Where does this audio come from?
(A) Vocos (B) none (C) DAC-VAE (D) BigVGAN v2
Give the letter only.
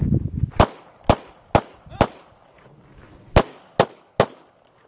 B